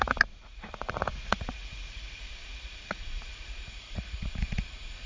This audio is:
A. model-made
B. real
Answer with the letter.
A